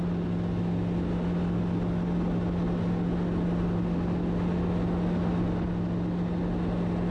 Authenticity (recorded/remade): recorded